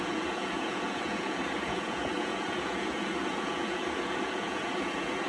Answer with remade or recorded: remade